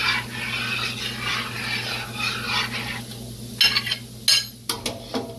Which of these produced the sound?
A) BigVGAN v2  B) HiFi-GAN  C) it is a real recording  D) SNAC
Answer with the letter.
C